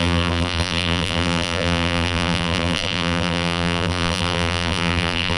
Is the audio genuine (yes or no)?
no